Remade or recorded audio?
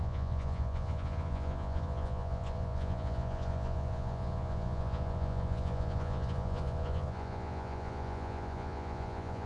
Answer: remade